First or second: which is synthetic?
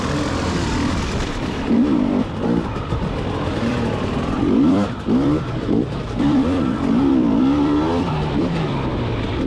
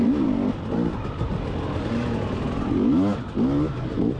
first